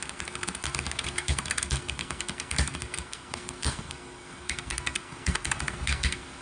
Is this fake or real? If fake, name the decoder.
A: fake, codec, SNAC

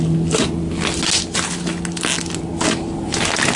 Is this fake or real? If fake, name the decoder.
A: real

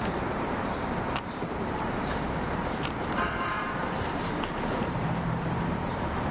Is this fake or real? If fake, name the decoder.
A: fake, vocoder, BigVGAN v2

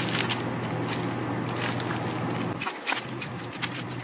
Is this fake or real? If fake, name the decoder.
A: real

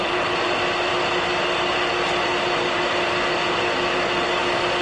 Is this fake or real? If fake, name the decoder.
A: real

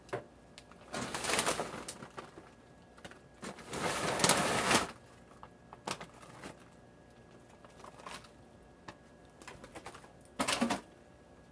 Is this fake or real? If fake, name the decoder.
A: real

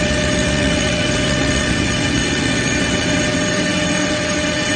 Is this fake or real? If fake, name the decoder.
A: fake, vocoder, WaveNeXt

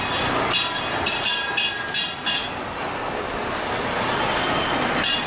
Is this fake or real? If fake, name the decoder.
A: real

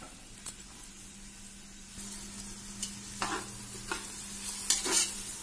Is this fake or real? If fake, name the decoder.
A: real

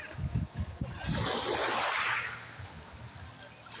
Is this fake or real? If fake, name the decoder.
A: real